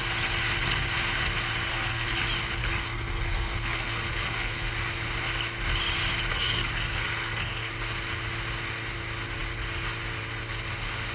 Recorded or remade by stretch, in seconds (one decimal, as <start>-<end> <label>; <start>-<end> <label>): 0.0-1.7 recorded; 1.7-2.2 remade; 2.2-2.6 recorded; 2.6-4.7 remade; 4.7-6.3 recorded; 6.3-7.7 remade; 7.7-11.1 recorded